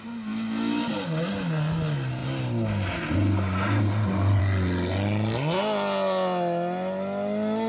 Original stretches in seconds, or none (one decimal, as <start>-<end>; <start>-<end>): 0.0-7.7